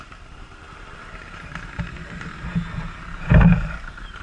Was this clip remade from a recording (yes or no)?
yes